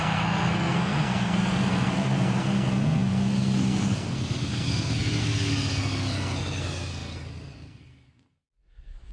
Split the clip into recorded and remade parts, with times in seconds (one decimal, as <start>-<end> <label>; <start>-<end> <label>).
0.0-9.1 remade